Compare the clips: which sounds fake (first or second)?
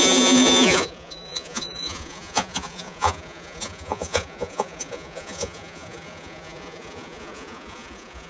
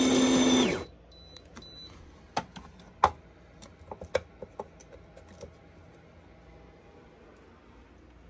first